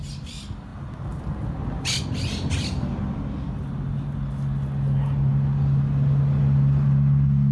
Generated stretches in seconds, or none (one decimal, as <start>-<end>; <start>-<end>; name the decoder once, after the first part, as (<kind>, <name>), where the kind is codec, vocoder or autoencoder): none